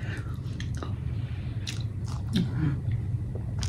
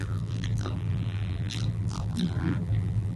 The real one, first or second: first